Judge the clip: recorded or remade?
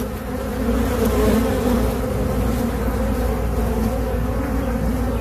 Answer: recorded